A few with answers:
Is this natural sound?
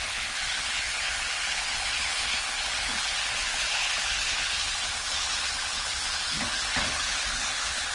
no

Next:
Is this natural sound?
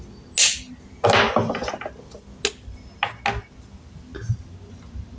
yes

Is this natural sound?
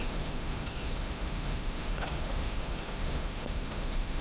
no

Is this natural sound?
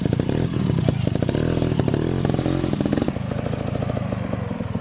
yes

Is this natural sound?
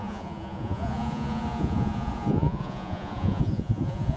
no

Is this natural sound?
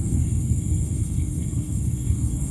no